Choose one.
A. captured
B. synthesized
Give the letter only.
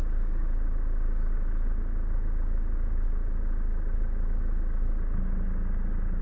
A